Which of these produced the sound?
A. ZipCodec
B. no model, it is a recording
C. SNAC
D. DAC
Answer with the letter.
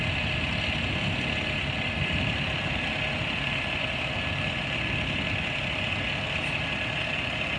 B